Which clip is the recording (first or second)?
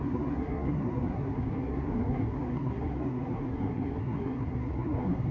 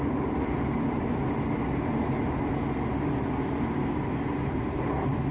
second